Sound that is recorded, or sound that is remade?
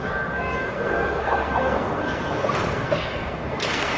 remade